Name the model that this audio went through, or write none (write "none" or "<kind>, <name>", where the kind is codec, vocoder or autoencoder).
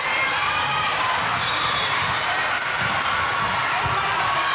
none